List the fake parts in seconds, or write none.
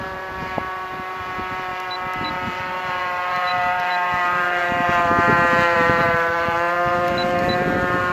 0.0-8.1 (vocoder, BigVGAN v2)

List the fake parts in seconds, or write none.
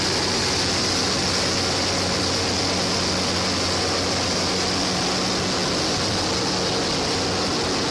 none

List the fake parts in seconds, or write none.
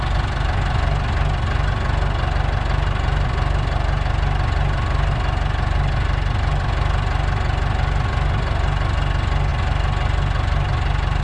none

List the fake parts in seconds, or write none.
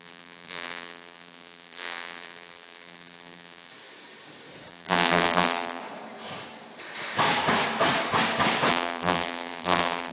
0.0-3.7 (vocoder, BigVGAN v2); 4.7-5.8; 8.7-10.1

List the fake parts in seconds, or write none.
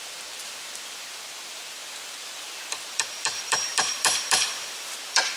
0.0-5.4 (vocoder, BigVGAN v2)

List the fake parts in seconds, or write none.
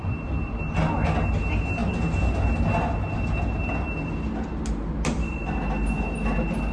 0.0-0.6 (vocoder, BigVGAN v2)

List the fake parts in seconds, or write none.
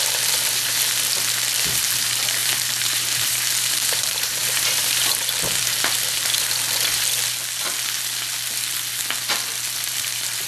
2.4-5.1 (vocoder, BigVGAN v2)